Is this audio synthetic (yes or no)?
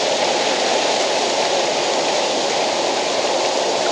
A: no